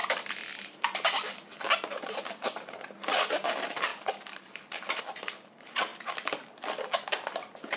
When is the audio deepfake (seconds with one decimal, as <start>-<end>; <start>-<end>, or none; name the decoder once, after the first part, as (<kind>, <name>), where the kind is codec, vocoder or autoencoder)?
2.1-5.9 (vocoder, BigVGAN v2)